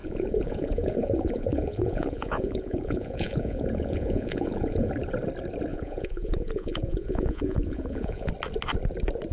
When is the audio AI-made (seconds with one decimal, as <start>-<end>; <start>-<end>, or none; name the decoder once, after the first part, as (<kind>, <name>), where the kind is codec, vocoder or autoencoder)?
0.0-4.9 (vocoder, Vocos); 5.7-8.3